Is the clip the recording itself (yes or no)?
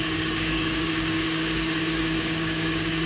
no